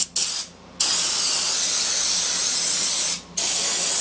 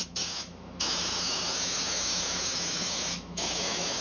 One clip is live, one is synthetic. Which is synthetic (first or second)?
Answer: second